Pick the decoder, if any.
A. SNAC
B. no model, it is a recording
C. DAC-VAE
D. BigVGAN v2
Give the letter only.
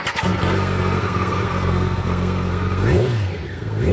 A